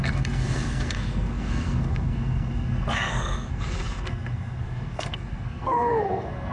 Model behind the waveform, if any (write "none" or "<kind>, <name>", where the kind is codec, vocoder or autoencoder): codec, SNAC